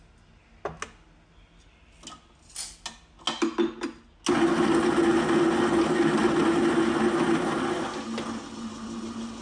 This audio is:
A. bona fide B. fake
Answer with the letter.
A